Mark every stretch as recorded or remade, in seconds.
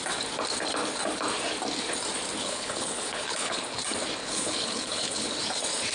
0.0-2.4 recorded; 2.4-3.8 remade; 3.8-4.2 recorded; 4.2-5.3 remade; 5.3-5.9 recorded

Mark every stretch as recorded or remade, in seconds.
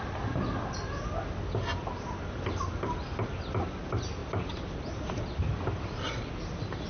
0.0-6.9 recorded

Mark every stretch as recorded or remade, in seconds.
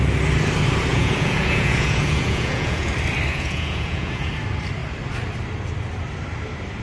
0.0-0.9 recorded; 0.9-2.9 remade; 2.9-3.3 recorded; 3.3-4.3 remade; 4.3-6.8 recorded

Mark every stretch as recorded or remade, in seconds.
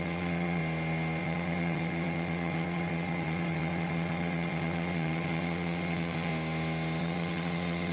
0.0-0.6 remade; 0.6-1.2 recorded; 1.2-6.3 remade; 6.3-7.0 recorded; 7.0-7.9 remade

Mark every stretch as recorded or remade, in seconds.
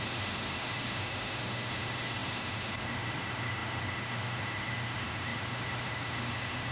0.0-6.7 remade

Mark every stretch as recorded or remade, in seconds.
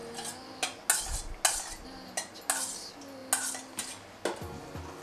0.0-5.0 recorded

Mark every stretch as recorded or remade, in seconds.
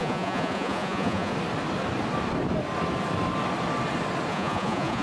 0.0-1.3 remade; 1.3-4.3 recorded; 4.3-5.0 remade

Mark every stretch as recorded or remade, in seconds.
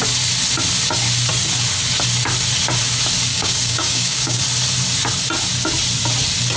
0.0-3.3 recorded; 3.3-4.4 remade; 4.4-6.6 recorded